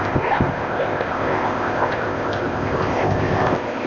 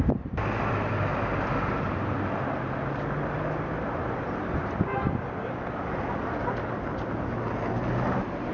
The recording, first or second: second